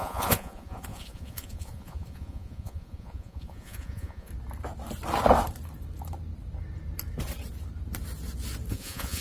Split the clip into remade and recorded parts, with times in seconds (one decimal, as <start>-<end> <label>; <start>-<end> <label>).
0.0-4.3 remade; 4.3-8.7 recorded; 8.7-9.2 remade

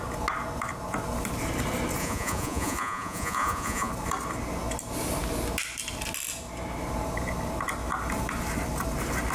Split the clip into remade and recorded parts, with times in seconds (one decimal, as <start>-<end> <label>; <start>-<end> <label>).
0.0-2.0 recorded; 2.0-3.9 remade; 3.9-9.3 recorded

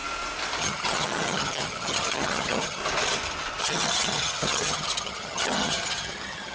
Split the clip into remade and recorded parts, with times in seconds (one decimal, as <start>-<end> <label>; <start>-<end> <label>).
0.0-0.6 recorded; 0.6-2.8 remade; 2.8-3.6 recorded; 3.6-6.5 remade

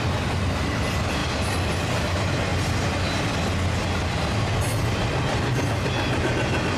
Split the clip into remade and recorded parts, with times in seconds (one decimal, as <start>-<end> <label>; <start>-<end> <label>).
0.0-6.8 recorded

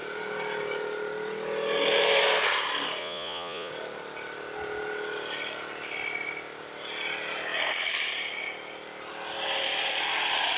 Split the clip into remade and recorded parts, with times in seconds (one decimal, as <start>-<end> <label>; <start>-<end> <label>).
0.0-3.0 recorded; 3.0-3.7 remade; 3.7-10.6 recorded